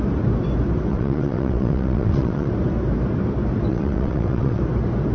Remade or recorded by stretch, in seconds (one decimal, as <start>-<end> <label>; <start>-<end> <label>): 0.0-0.9 recorded; 0.9-2.5 remade; 2.5-3.7 recorded; 3.7-4.6 remade; 4.6-5.1 recorded